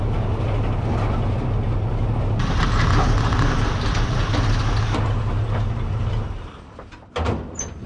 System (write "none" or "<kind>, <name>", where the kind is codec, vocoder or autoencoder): none